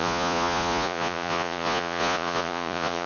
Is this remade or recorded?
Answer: remade